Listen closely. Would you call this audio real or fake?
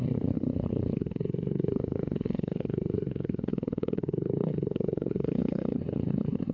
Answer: fake